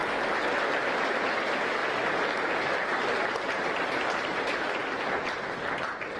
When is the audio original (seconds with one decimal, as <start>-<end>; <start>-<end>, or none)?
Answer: 0.0-0.7; 1.8-3.5

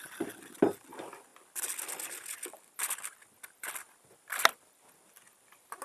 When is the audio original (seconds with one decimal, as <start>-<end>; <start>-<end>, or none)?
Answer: 0.0-5.8

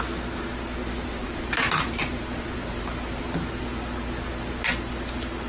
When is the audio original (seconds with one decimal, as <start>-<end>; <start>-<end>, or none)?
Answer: 0.0-1.2; 3.2-5.5

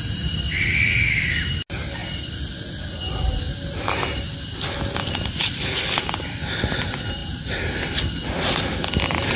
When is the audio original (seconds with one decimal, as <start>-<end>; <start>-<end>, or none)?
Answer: 0.0-9.4

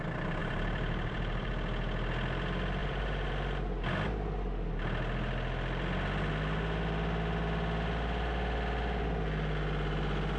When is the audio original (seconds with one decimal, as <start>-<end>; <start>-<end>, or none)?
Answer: 0.0-0.4; 1.5-2.8; 3.3-10.4